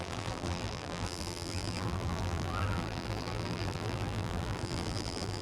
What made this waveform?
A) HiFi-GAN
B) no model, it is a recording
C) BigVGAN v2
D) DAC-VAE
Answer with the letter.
C